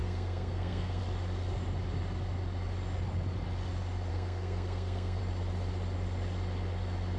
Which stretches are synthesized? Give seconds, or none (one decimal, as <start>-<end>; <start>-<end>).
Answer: 0.0-1.0; 4.1-5.2